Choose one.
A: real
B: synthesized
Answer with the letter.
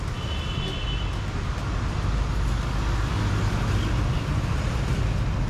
A